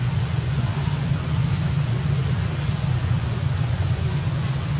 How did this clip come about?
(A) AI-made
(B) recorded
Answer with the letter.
A